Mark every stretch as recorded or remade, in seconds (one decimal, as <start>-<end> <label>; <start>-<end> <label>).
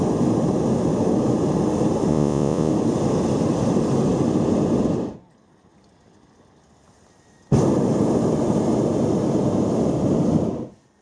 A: 0.0-2.1 recorded; 2.1-2.7 remade; 2.7-11.0 recorded